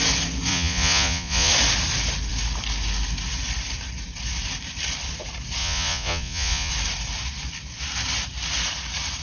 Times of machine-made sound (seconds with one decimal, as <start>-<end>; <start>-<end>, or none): 0.5-1.5; 5.6-6.7